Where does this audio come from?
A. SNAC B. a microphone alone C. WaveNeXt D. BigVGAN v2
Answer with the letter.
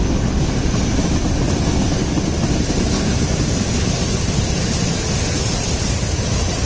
B